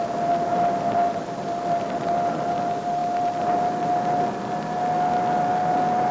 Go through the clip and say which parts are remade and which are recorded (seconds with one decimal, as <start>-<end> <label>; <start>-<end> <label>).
0.0-6.1 recorded